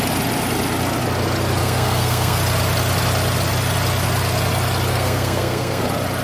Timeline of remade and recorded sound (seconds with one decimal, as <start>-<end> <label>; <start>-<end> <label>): 0.0-1.6 recorded; 1.6-2.4 remade; 2.4-4.9 recorded; 4.9-5.8 remade; 5.8-6.2 recorded